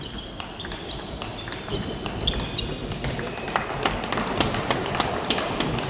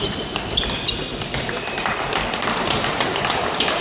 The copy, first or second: second